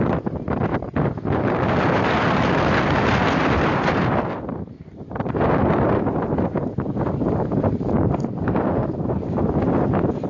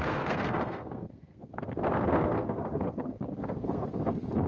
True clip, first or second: first